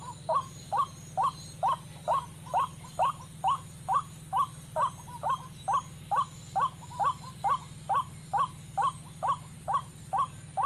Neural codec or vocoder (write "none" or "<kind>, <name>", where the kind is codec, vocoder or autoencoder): none